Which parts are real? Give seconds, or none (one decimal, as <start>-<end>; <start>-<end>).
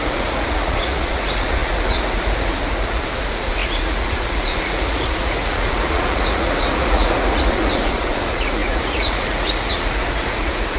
none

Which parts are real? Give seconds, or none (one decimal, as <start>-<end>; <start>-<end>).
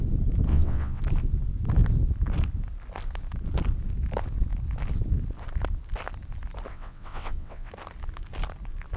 0.0-0.5; 1.0-6.7; 7.7-9.0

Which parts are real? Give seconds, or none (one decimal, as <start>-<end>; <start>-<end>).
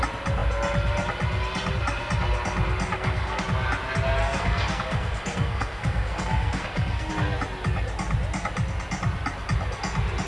0.0-2.9; 3.4-4.2; 7.1-10.3